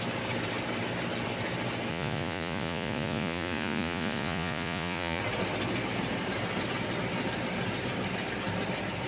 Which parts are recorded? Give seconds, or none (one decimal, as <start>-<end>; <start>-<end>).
0.0-1.9; 5.2-9.1